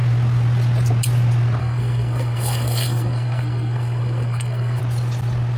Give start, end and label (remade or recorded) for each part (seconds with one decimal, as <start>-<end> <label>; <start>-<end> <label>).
0.0-1.6 recorded; 1.6-4.8 remade; 4.8-5.6 recorded